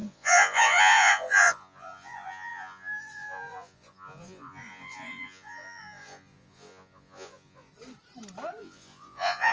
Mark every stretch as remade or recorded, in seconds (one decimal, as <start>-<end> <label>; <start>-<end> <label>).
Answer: 0.0-7.7 remade; 7.7-8.6 recorded; 8.6-9.5 remade